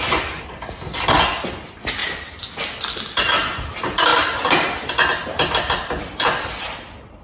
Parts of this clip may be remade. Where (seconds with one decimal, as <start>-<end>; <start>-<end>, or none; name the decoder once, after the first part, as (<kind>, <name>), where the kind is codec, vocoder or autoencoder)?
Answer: none